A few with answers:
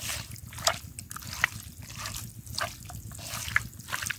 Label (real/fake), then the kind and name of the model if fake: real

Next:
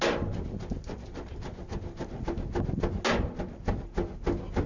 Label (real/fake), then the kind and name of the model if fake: real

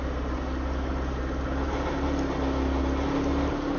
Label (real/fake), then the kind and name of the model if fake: real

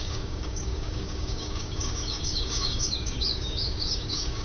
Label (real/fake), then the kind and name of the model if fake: fake, codec, DAC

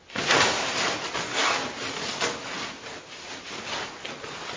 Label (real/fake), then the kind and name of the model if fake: real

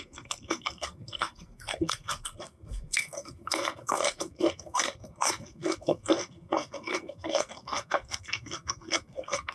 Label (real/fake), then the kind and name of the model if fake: fake, codec, SNAC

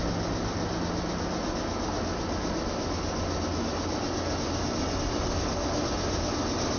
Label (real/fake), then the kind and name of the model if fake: real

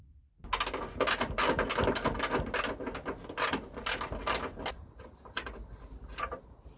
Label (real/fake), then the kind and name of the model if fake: real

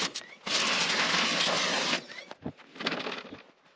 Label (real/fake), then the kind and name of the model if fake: real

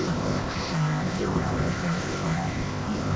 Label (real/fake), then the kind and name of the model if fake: fake, codec, ZipCodec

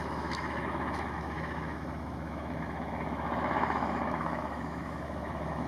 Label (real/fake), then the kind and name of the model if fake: fake, autoencoder, DAC-VAE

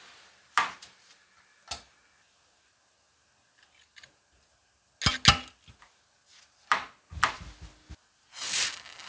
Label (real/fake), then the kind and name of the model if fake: real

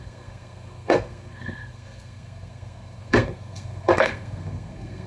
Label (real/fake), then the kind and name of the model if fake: fake, codec, SNAC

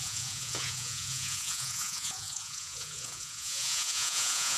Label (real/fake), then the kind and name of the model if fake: fake, vocoder, Vocos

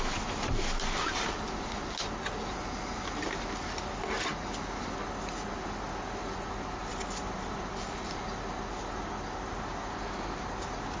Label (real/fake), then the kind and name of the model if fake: real